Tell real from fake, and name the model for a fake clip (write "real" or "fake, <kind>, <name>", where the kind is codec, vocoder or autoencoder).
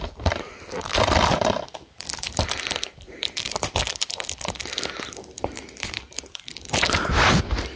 fake, vocoder, BigVGAN v2